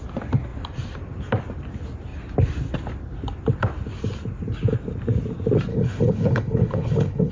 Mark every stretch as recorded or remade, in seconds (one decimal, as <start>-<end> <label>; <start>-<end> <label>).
0.0-5.7 recorded; 5.7-7.3 remade